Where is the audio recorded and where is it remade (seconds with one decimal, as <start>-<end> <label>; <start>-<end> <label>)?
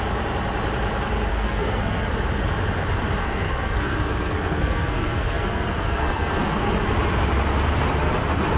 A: 0.0-1.3 recorded; 1.3-2.1 remade; 2.1-3.2 recorded; 3.2-6.7 remade; 6.7-8.6 recorded